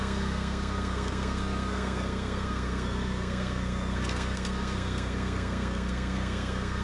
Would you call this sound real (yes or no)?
no